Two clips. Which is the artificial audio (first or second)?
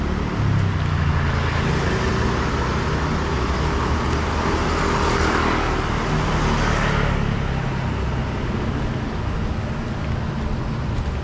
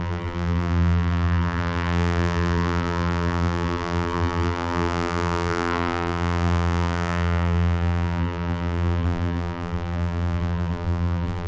second